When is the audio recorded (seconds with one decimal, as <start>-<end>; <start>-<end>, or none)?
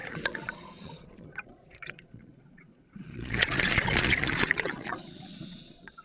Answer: none